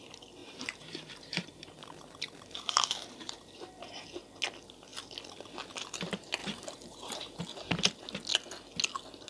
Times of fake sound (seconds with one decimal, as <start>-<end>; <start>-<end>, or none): 0.4-3.7; 6.4-7.4